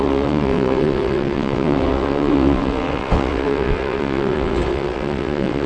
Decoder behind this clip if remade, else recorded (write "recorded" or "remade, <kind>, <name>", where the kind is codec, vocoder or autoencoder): remade, vocoder, WaveNeXt